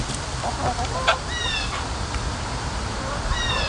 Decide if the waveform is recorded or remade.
recorded